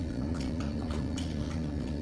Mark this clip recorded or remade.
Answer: remade